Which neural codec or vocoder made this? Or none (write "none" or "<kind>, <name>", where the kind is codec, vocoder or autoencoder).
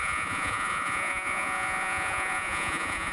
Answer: vocoder, Vocos